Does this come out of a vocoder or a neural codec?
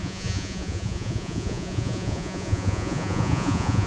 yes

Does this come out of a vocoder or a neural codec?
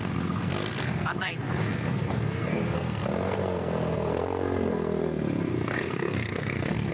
yes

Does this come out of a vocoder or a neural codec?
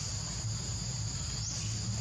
no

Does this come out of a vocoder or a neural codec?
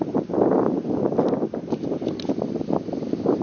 no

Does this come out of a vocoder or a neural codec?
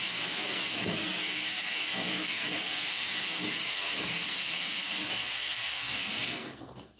yes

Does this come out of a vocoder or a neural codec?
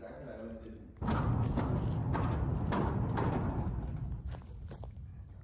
no